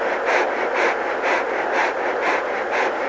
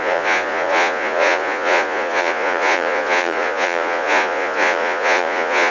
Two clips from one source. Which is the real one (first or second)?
first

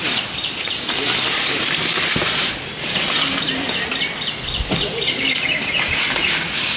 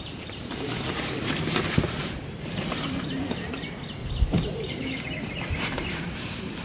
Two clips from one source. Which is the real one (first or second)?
first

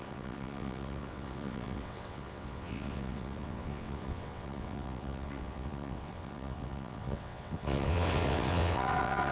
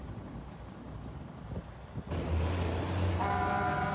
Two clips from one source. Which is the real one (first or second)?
second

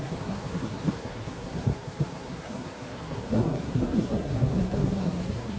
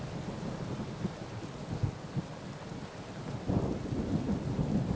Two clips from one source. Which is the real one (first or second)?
second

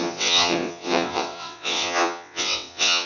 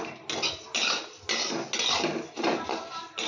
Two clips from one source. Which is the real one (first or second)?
second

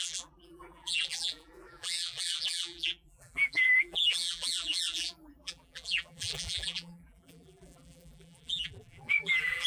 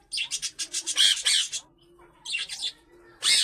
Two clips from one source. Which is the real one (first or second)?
second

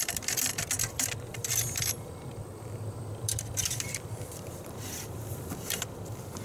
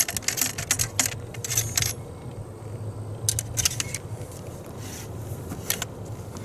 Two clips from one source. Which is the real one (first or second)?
second